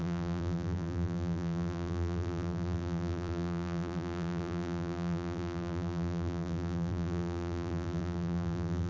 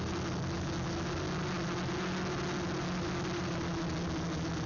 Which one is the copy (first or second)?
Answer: first